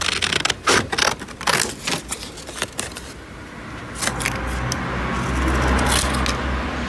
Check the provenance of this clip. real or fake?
real